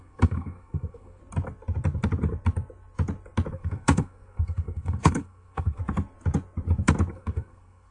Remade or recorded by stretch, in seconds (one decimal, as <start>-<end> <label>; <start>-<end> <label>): 0.0-1.2 remade; 1.2-3.5 recorded; 3.5-5.8 remade; 5.8-7.1 recorded; 7.1-7.9 remade